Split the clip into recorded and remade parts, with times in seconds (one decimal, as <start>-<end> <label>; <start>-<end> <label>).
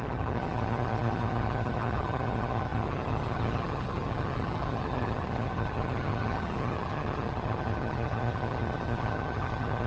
0.0-9.9 remade